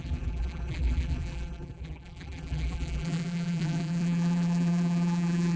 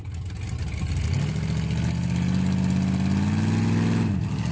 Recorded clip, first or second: second